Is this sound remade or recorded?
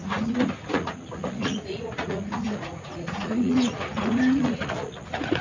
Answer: remade